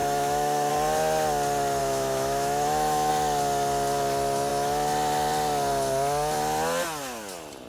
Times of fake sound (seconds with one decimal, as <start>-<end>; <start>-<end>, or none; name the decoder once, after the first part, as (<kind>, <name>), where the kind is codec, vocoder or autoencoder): 0.0-0.7 (autoencoder, DAC-VAE); 1.8-3.1